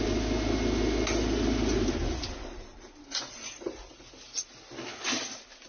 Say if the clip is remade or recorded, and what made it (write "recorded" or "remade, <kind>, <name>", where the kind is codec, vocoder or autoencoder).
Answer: recorded